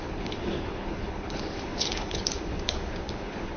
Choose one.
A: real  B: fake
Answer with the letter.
B